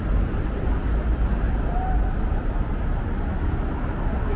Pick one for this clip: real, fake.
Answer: real